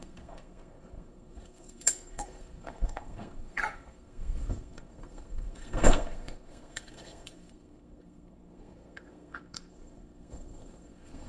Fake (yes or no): yes